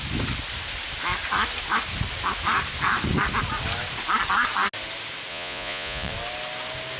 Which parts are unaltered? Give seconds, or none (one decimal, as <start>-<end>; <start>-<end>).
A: 0.0-5.3; 6.1-7.0